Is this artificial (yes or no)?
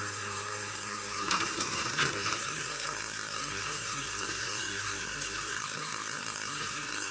yes